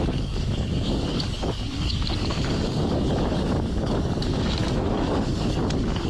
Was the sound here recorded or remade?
remade